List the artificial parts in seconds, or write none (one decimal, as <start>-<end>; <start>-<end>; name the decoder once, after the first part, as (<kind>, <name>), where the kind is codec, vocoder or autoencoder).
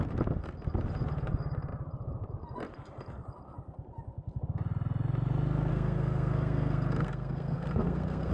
5.7-8.3 (codec, SNAC)